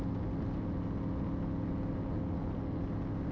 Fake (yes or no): no